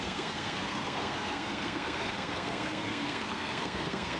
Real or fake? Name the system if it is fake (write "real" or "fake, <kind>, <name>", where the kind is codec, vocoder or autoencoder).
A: fake, codec, SNAC